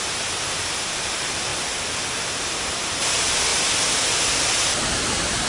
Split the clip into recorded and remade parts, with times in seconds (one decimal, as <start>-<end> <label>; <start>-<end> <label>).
0.0-1.5 remade; 1.5-2.3 recorded; 2.3-3.5 remade; 3.5-5.5 recorded